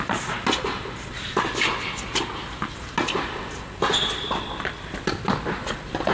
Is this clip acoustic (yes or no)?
yes